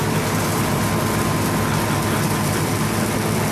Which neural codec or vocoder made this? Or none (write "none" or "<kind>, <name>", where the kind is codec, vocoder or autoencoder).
none